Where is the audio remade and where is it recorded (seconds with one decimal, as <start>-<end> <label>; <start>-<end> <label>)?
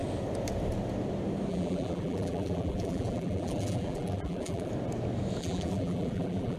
0.0-1.5 recorded; 1.5-4.7 remade; 4.7-5.4 recorded; 5.4-6.6 remade